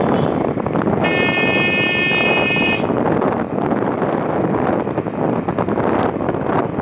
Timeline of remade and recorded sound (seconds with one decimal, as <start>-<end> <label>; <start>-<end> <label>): 0.0-6.8 recorded